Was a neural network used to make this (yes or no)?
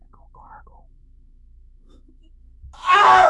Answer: yes